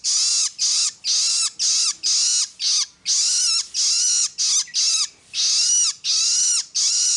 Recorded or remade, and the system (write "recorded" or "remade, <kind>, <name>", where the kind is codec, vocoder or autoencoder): recorded